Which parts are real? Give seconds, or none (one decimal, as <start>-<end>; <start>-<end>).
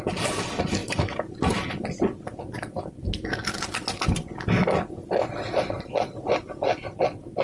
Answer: 0.0-5.0; 6.3-7.4